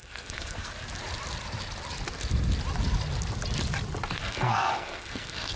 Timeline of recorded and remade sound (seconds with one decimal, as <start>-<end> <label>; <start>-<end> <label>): 0.0-0.7 remade; 0.7-4.2 recorded; 4.2-5.6 remade